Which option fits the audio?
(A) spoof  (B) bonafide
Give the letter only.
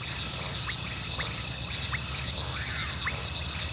B